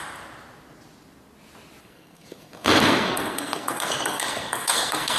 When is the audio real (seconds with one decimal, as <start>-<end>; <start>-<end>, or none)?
0.0-1.8